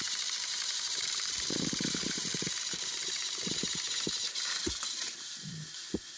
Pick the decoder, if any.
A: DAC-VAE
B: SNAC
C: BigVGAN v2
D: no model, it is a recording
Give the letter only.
C